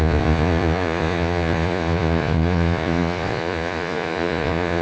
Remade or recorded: remade